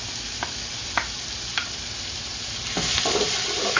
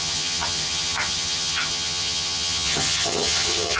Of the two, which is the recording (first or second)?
first